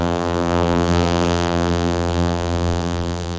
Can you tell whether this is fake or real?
fake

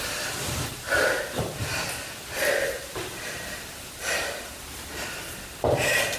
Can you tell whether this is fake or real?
fake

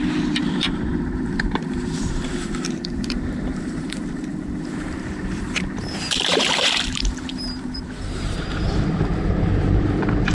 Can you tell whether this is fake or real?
fake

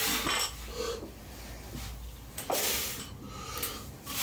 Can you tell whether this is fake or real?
real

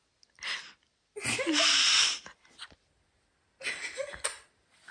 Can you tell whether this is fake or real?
real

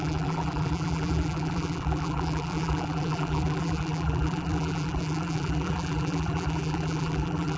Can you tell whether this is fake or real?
fake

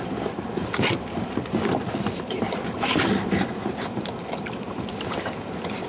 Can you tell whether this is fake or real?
fake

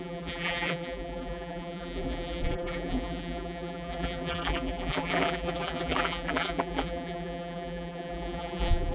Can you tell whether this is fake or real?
fake